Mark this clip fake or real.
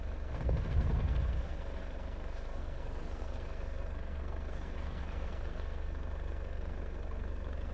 fake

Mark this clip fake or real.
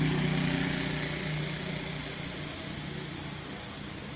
real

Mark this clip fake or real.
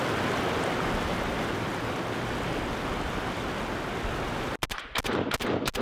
real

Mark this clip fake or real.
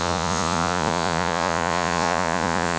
fake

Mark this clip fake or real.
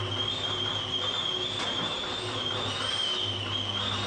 real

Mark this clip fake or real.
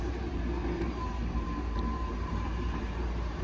fake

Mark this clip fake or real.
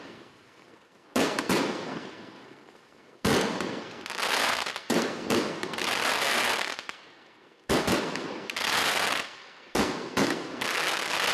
fake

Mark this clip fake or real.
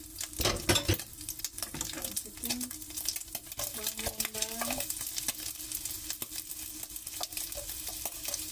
real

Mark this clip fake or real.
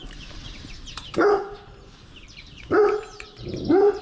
fake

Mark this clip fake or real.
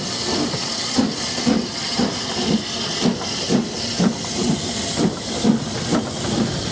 real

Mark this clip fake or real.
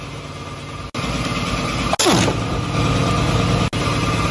real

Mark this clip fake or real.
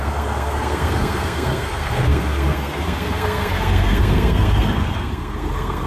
fake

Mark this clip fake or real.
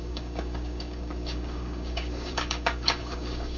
fake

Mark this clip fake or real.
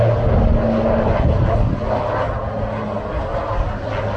real